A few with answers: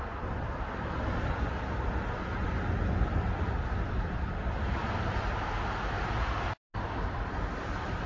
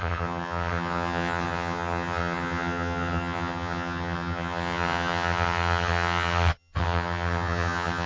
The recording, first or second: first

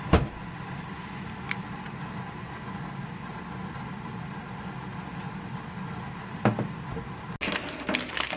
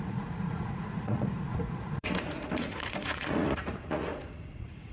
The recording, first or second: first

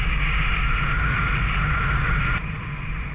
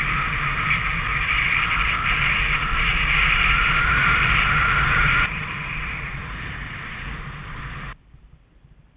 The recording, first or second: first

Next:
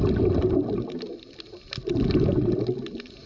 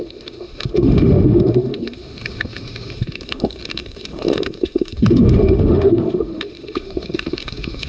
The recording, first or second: first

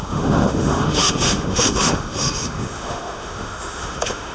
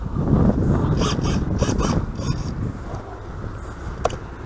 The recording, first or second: second